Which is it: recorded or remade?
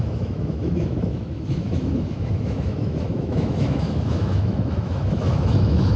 remade